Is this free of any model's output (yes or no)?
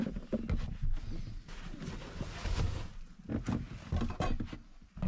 yes